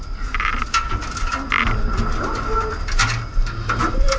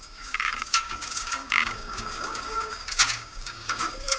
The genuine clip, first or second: first